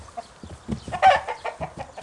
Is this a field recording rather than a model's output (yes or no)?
yes